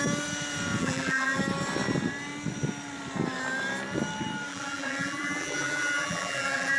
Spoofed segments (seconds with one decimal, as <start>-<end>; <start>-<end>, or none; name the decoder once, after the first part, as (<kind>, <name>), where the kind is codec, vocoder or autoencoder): 0.8-1.4 (vocoder, BigVGAN v2); 4.5-6.8